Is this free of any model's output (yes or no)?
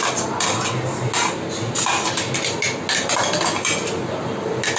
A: yes